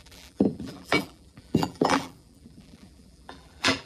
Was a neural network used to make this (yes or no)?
yes